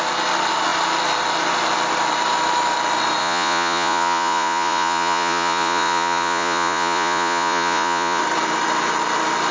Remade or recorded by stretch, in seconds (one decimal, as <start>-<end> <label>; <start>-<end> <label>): 0.0-3.2 recorded; 3.2-8.2 remade; 8.2-9.5 recorded